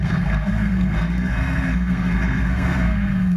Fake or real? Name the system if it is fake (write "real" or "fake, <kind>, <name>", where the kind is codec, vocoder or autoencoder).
fake, codec, SNAC